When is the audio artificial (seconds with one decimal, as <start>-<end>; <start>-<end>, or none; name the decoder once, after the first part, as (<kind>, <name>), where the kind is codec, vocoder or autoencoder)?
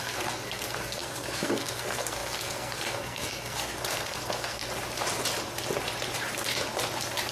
0.0-4.6 (codec, SNAC)